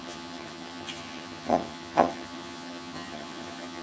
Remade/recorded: remade